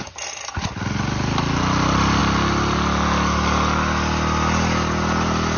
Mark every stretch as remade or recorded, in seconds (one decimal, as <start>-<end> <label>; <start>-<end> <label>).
0.0-5.6 recorded